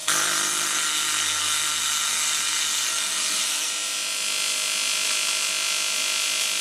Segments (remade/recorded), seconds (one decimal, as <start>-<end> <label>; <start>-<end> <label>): 0.0-3.7 remade; 3.7-6.6 recorded